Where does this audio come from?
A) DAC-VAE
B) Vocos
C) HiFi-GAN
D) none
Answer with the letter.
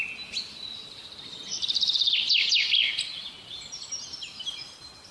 D